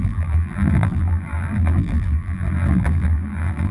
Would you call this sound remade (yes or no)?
yes